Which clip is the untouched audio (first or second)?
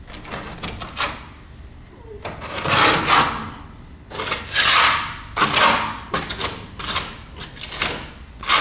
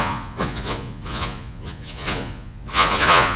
first